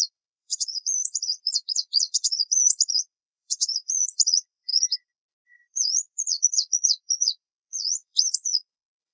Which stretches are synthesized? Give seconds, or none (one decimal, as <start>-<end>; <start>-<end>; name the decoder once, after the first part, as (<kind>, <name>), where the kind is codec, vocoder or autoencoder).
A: 0.0-9.1 (vocoder, Vocos)